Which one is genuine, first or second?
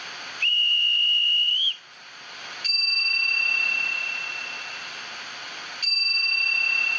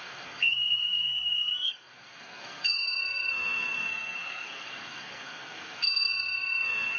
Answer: first